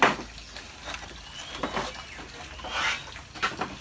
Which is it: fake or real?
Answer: real